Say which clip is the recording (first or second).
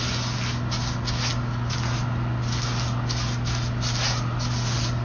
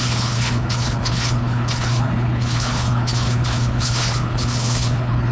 first